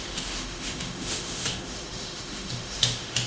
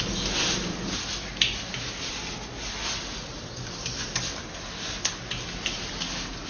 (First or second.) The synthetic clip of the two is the first